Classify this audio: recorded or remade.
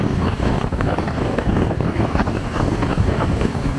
remade